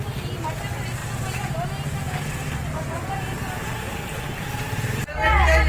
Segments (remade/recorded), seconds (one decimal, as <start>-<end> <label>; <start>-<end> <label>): 0.0-5.7 recorded